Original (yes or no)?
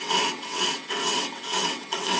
no